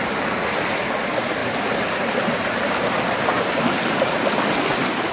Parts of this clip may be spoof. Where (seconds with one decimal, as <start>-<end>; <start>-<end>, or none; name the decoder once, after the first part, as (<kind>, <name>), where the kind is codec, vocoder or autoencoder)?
none